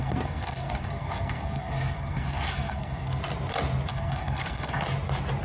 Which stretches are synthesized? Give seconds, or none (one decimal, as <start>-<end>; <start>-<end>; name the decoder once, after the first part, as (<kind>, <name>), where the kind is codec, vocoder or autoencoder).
0.0-3.2 (codec, SNAC); 3.9-4.8